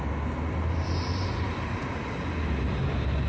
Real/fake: real